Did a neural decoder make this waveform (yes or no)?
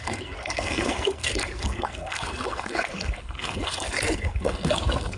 yes